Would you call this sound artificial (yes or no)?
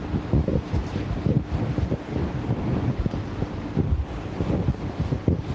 no